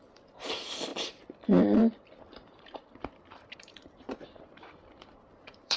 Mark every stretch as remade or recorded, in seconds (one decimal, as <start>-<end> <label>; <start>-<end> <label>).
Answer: 0.0-5.8 remade